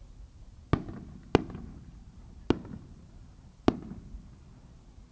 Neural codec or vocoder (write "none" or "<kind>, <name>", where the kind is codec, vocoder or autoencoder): none